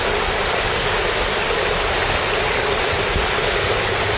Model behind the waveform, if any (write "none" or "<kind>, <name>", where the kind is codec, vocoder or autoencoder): none